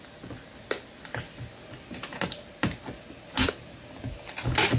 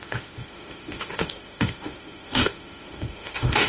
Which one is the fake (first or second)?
second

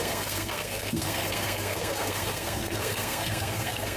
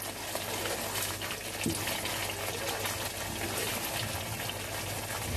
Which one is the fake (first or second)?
first